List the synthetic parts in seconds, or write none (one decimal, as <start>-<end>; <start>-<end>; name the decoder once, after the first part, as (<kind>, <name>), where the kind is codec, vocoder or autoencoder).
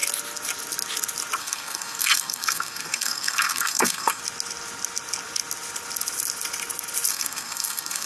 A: 1.4-4.2 (codec, SNAC); 7.1-8.1